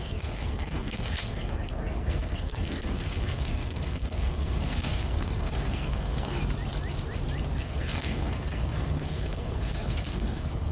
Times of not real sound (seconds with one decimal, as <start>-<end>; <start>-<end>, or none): 0.0-6.4; 7.5-10.7